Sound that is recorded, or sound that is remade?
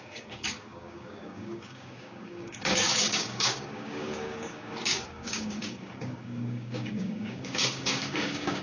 remade